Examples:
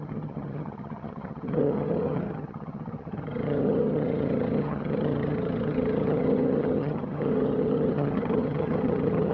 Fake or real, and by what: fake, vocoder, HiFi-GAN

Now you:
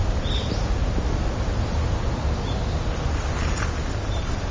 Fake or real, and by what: real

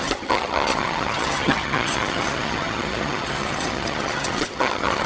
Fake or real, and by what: fake, vocoder, HiFi-GAN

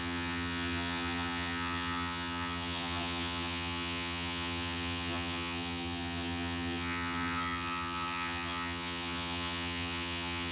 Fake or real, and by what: fake, vocoder, HiFi-GAN